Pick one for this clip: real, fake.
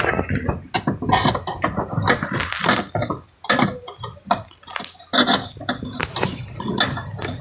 real